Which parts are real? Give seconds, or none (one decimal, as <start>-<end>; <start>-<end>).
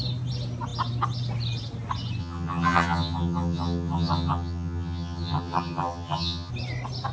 0.0-2.2; 6.5-7.1